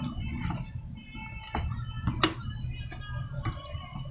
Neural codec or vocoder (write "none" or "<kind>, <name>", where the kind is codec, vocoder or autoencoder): none